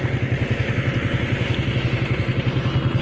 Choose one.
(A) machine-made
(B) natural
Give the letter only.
B